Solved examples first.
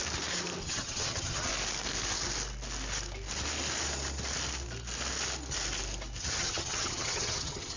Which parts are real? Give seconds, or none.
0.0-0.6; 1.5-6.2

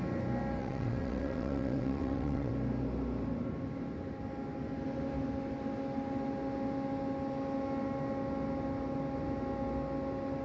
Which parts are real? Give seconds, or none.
0.0-0.6; 2.5-10.4

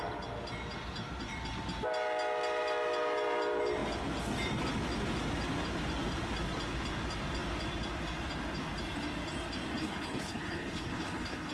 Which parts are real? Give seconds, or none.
0.0-9.8